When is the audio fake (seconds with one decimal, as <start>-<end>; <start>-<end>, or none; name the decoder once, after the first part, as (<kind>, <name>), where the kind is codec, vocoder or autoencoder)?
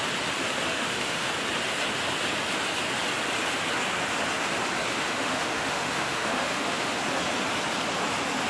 0.4-1.3 (autoencoder, DAC-VAE); 4.9-7.0